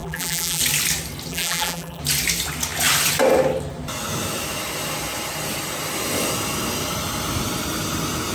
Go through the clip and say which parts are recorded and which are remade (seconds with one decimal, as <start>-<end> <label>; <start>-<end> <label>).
0.0-0.6 remade; 0.6-1.3 recorded; 1.3-2.0 remade; 2.0-8.3 recorded